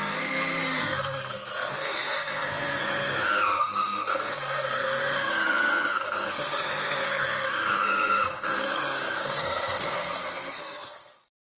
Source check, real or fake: fake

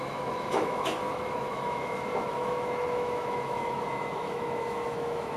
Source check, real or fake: fake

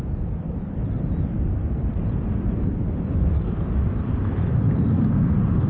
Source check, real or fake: real